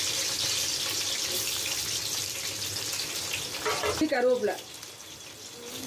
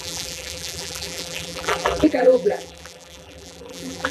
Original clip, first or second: first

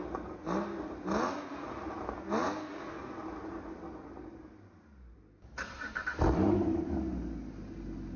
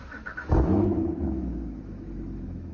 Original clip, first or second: first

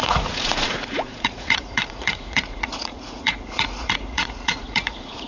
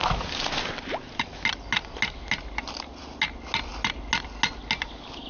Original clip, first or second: second